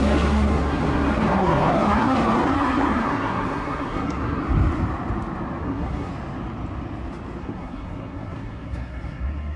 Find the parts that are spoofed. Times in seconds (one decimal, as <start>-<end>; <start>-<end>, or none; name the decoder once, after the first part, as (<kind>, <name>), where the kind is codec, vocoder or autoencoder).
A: 0.0-4.4 (codec, SNAC); 5.6-6.1; 7.4-9.6